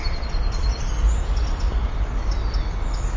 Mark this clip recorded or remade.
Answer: recorded